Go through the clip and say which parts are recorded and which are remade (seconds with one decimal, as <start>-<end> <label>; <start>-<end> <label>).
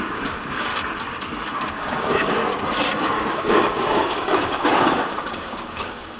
0.0-0.7 remade; 0.7-1.7 recorded; 1.7-2.4 remade; 2.4-3.1 recorded; 3.1-6.2 remade